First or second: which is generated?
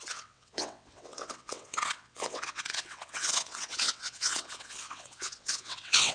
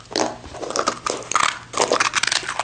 first